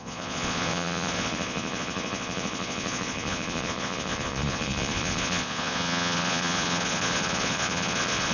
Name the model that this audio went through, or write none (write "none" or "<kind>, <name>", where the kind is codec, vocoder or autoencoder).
vocoder, Vocos